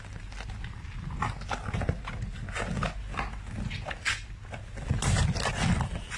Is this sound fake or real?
real